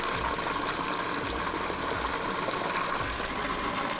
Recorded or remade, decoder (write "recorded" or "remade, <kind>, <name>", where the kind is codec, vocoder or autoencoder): recorded